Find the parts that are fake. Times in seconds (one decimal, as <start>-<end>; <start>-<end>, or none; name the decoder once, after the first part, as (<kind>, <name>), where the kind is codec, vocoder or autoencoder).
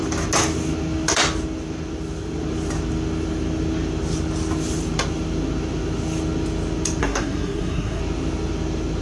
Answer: 7.0-8.0 (codec, SNAC)